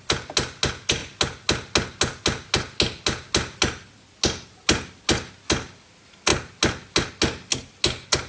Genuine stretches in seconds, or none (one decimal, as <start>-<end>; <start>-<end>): 0.0-8.3